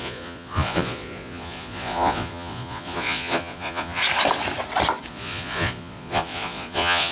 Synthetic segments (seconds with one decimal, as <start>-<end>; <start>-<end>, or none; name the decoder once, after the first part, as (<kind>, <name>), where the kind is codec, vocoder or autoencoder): 0.0-4.0 (vocoder, Vocos); 5.1-7.1